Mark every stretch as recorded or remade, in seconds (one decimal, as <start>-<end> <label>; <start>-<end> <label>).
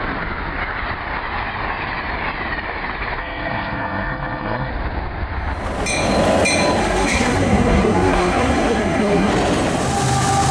0.0-3.2 recorded; 3.2-4.7 remade; 4.7-6.8 recorded; 6.8-9.3 remade; 9.3-10.5 recorded